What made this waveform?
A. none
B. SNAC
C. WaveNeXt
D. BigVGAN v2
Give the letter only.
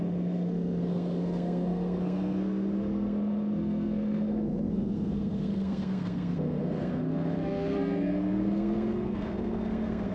B